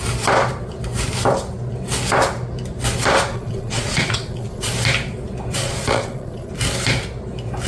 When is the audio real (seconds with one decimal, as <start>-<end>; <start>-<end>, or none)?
0.0-3.3; 4.6-5.6; 6.5-7.7